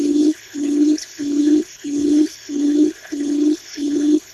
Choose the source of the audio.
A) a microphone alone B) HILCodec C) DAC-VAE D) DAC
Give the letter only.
B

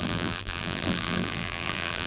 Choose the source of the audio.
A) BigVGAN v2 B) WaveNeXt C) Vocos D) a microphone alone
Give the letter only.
A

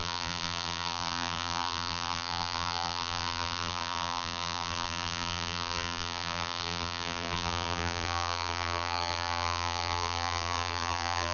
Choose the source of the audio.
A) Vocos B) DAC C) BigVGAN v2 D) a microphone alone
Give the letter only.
C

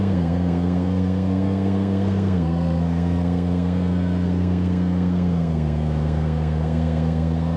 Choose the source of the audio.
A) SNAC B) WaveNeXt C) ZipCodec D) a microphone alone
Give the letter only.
A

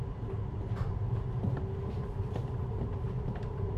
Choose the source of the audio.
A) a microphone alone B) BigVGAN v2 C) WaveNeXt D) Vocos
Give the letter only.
A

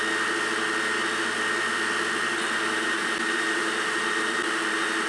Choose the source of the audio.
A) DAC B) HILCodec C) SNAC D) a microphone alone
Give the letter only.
D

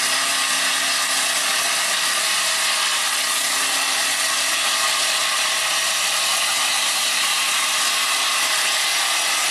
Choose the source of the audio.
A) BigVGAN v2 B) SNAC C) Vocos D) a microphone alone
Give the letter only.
D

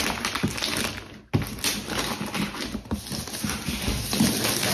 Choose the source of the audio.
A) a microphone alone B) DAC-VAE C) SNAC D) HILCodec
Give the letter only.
A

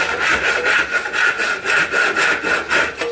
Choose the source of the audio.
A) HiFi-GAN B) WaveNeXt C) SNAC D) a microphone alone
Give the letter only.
D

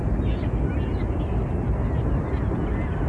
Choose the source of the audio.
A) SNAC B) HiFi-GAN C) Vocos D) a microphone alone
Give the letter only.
D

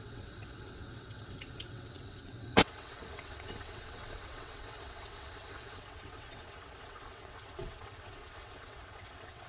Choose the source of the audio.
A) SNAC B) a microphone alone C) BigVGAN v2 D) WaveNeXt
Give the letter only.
D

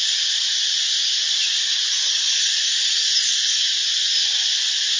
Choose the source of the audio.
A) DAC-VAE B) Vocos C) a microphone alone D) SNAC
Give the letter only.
C